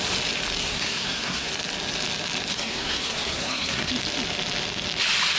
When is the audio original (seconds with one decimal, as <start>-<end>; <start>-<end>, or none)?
0.0-0.6; 1.5-2.5; 3.9-5.4

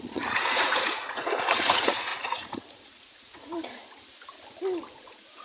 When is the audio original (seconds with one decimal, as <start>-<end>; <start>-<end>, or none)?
3.8-4.9

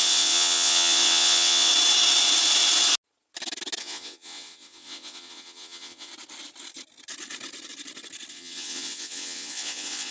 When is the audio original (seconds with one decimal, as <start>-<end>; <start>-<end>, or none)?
1.7-3.8; 6.1-8.3

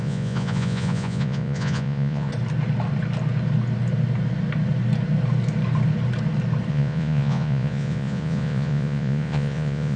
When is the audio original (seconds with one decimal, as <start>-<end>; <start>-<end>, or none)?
2.3-6.7

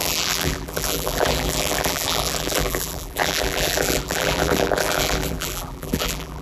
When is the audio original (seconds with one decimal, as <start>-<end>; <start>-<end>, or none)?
none

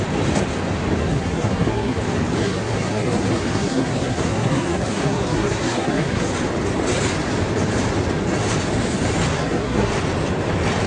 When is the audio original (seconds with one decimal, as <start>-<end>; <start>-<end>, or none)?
0.0-1.0; 2.0-2.4; 6.3-9.3; 9.9-10.9

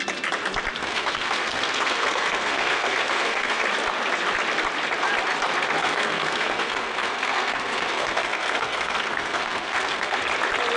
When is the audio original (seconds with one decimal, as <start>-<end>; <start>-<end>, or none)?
0.0-0.8; 3.6-5.8; 10.2-10.8